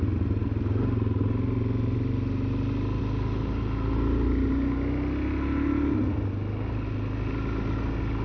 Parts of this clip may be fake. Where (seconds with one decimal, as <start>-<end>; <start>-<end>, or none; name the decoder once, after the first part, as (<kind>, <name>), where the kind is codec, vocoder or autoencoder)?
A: none